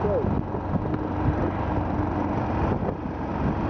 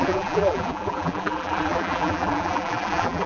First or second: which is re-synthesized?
second